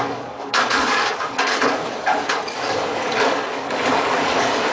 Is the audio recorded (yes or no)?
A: no